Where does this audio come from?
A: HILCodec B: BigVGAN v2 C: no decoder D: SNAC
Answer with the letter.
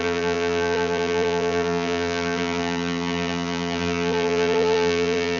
B